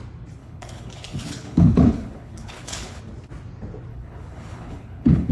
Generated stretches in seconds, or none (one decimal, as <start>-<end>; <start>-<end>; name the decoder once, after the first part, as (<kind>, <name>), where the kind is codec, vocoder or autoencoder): 0.4-3.0 (codec, HILCodec); 3.9-5.3